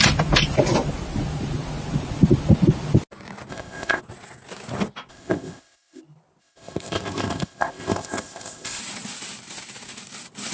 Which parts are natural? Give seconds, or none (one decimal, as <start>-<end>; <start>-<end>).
0.0-3.5; 4.0-5.1; 6.0-6.4; 8.8-10.5

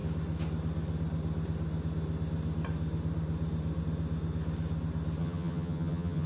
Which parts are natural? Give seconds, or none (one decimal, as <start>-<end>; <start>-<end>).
0.0-5.2

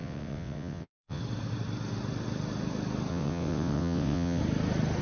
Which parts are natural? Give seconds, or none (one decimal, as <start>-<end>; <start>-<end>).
1.2-3.1; 4.4-5.0